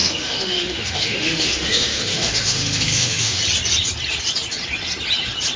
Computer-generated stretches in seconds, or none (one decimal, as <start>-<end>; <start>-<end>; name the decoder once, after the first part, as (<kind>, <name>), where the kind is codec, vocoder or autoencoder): 0.0-3.4 (autoencoder, DAC-VAE)

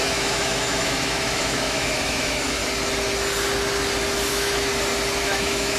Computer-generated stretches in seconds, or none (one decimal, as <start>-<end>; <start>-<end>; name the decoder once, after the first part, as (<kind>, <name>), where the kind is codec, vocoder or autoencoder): 0.0-2.6 (autoencoder, DAC-VAE); 4.3-4.7; 5.2-5.8

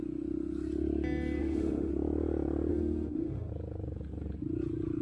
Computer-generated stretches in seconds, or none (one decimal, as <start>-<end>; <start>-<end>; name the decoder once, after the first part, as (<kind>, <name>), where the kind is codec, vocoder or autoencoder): 1.4-1.9 (autoencoder, DAC-VAE); 2.7-3.5

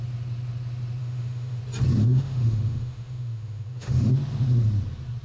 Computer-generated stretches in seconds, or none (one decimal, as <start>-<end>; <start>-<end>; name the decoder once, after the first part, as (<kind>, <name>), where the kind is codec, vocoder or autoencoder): 1.0-1.6 (autoencoder, DAC-VAE); 2.0-4.1

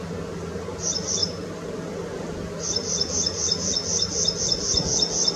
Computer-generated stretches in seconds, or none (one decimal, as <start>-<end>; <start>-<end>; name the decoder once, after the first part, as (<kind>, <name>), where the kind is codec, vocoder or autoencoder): none